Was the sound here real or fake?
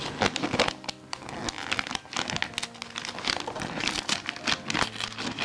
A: real